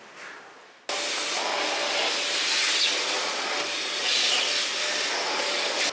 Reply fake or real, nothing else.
real